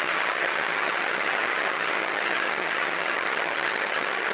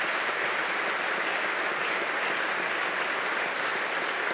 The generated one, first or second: first